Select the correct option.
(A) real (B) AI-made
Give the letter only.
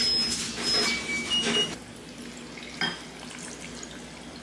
A